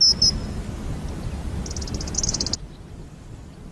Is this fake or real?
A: real